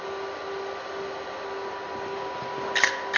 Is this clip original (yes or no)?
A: yes